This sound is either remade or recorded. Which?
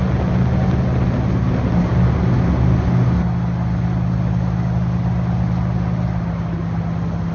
recorded